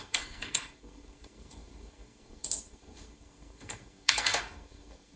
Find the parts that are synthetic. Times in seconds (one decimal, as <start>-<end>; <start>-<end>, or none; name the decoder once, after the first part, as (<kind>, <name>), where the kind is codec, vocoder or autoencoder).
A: 0.0-5.2 (codec, SNAC)